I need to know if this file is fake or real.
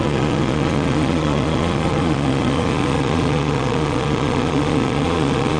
fake